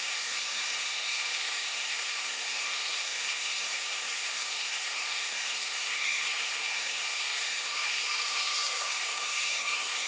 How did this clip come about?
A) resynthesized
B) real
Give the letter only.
A